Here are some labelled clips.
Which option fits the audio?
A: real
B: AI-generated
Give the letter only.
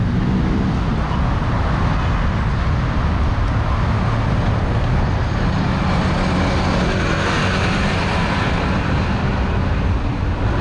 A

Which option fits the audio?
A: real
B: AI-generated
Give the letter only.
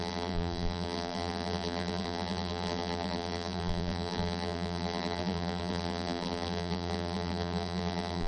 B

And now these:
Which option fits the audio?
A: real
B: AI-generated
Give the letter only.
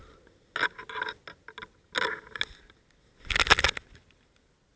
A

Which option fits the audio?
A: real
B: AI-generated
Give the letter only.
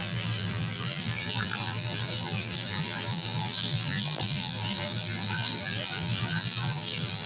B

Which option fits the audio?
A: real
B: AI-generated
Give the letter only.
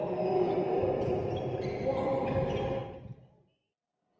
A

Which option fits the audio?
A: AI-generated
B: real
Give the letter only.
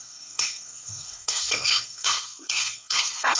A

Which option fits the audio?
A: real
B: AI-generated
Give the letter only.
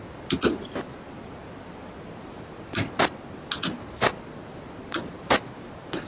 A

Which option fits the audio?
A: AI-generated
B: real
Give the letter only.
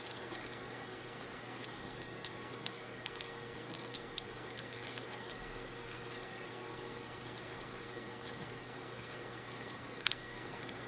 A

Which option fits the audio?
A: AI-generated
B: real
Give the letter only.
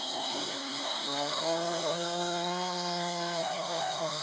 A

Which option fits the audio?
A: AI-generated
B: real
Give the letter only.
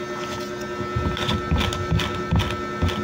B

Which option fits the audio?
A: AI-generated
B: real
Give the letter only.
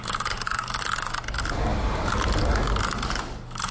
B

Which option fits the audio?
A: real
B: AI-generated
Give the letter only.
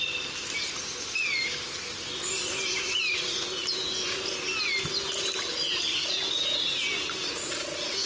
A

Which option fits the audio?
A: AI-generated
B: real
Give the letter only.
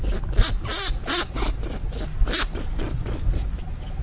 B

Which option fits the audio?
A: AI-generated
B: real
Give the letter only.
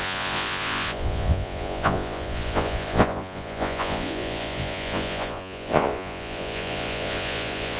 A